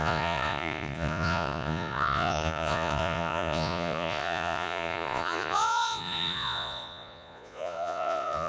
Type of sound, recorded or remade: remade